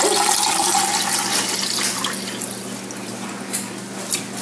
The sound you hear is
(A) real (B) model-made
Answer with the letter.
A